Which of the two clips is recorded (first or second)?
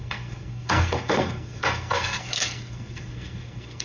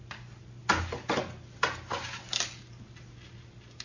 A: second